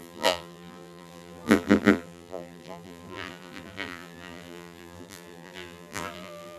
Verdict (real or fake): fake